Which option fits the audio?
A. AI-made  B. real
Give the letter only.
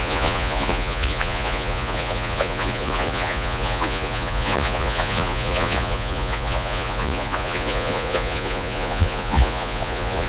A